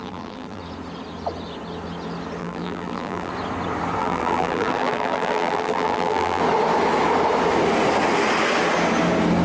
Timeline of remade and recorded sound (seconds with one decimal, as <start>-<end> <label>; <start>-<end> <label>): 0.0-0.6 remade; 0.6-2.4 recorded; 2.4-3.3 remade; 3.3-4.0 recorded; 4.0-6.4 remade; 6.4-9.4 recorded